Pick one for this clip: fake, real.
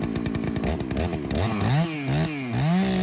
real